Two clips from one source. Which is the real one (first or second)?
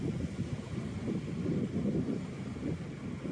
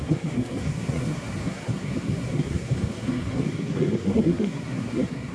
first